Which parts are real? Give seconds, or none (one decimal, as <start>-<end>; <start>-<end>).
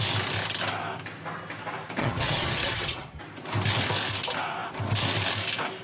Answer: 0.0-2.0; 3.2-5.8